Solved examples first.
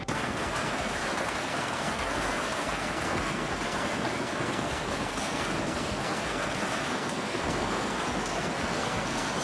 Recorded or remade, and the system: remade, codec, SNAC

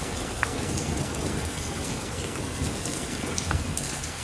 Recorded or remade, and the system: remade, codec, SNAC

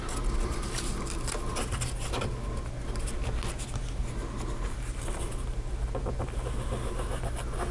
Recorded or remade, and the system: recorded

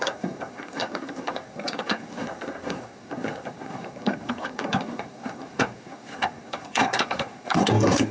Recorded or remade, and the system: remade, codec, SNAC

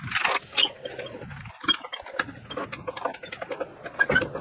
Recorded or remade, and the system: recorded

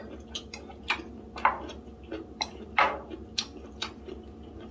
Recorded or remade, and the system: recorded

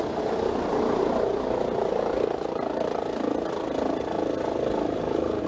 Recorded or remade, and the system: recorded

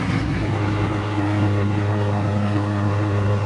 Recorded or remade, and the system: remade, codec, SNAC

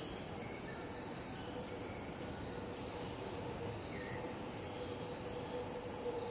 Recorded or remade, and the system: recorded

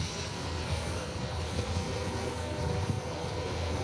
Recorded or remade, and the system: remade, codec, SNAC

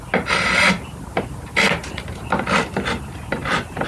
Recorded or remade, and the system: recorded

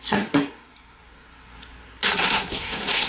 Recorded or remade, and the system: remade, codec, SNAC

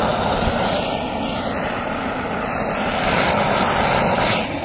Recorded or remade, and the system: recorded